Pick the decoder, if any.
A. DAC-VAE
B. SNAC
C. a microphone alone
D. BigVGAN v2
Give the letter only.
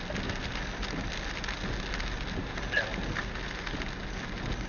C